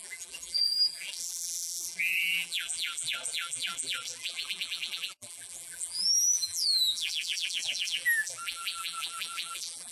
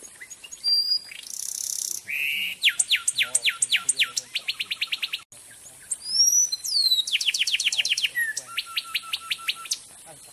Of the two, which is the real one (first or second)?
second